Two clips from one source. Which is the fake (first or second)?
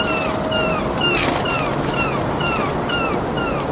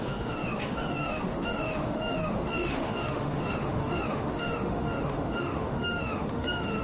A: second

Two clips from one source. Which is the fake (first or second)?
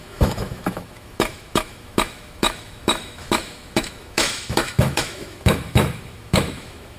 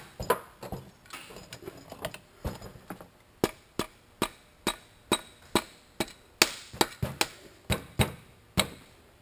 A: first